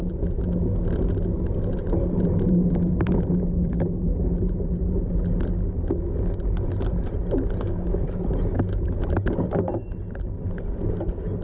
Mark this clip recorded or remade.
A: recorded